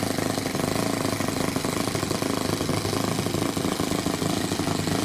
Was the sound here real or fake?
real